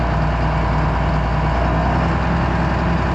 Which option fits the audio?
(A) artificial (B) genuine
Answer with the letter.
B